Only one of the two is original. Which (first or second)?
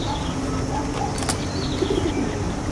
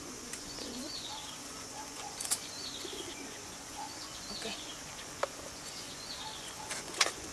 first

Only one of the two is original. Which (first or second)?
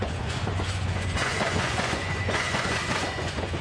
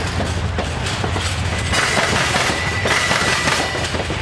second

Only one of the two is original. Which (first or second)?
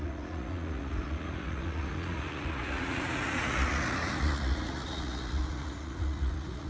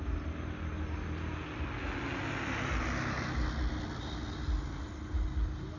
second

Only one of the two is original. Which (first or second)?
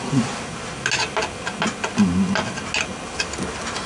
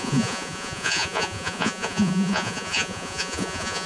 first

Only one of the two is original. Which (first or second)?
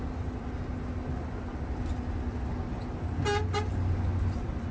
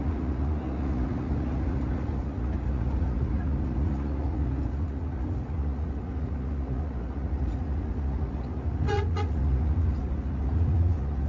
first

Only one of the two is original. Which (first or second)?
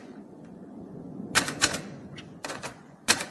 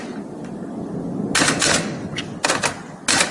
second